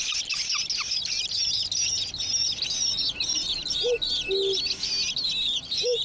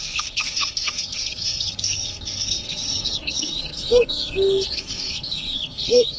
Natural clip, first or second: first